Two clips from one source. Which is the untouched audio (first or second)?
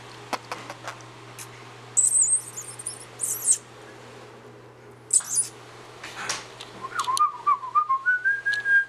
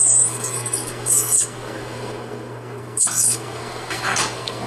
first